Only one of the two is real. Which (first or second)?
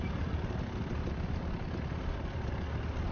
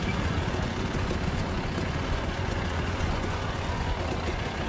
first